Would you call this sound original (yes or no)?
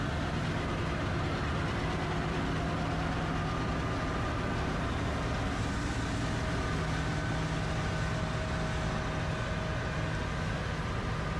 yes